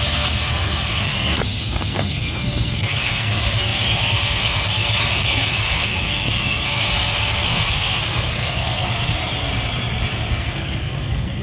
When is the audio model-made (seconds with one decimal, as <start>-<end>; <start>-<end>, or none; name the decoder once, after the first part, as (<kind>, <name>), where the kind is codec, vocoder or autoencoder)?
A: 0.0-9.2 (codec, SNAC); 10.3-11.4

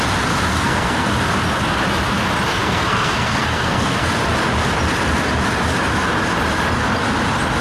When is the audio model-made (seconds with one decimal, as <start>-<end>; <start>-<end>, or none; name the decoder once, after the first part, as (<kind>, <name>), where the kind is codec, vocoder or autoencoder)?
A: 0.5-1.1 (codec, SNAC); 2.5-4.1